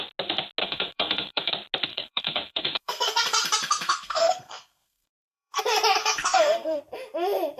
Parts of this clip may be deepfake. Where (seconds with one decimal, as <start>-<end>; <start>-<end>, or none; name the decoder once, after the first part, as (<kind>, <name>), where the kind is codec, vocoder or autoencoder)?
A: 0.6-1.5 (codec, SNAC); 1.9-5.6; 6.0-6.8

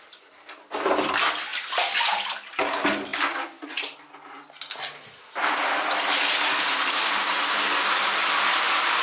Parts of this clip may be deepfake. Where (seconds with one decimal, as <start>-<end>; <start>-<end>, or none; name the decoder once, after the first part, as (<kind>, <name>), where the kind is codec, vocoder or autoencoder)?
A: none

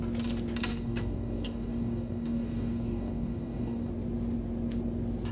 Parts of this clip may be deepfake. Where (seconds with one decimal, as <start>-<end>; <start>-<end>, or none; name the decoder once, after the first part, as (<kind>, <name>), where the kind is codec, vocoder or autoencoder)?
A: 0.7-3.9 (codec, DAC)

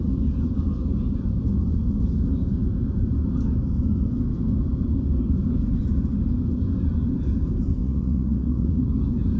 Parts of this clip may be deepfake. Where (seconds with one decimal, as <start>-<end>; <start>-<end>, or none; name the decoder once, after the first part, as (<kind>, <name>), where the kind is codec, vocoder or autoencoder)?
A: 7.8-8.9 (vocoder, Vocos)

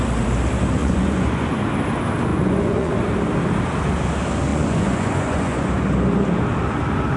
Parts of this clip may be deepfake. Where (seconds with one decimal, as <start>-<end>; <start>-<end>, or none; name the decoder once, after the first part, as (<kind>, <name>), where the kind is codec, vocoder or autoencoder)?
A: 0.8-1.5 (vocoder, Vocos); 2.3-2.9; 4.5-5.7

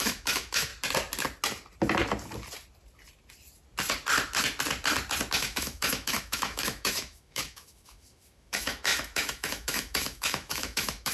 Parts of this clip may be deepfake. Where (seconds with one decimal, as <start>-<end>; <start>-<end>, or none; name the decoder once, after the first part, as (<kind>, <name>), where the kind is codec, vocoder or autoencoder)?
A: 0.0-0.7 (autoencoder, DAC-VAE); 5.3-11.1

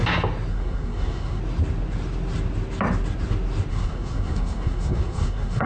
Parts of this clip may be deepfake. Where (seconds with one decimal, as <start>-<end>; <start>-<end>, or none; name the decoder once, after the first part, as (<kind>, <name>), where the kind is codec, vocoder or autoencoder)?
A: 0.5-1.4 (codec, SNAC); 3.7-5.7

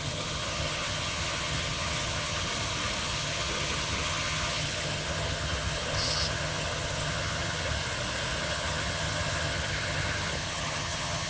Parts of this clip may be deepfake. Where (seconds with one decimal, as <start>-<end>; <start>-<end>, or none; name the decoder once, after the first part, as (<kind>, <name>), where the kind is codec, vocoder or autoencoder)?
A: 0.0-2.5 (vocoder, HiFi-GAN); 3.0-7.8; 8.4-11.3